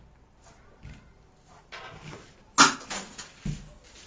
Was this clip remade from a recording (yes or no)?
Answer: no